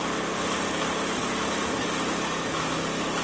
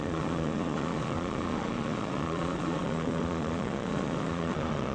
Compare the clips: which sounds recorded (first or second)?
first